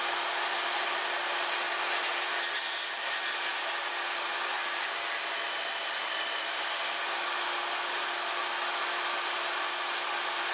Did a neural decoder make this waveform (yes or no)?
no